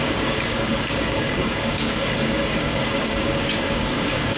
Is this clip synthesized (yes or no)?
yes